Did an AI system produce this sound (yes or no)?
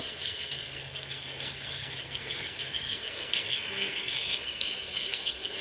yes